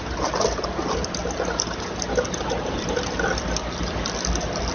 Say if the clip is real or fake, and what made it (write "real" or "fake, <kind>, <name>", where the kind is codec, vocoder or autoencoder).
real